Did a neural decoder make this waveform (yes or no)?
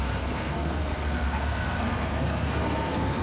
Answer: yes